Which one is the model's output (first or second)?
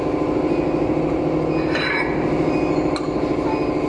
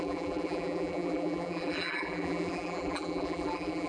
second